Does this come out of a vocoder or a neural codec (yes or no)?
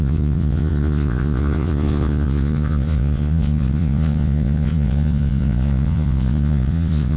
yes